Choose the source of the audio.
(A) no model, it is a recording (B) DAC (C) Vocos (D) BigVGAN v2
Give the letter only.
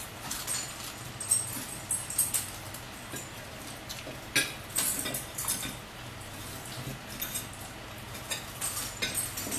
A